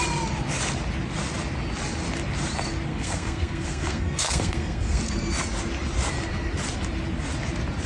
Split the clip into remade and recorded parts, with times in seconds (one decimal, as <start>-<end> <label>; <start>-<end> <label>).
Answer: 0.0-2.9 recorded; 2.9-5.0 remade; 5.0-7.9 recorded